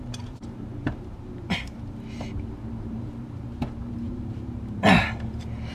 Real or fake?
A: fake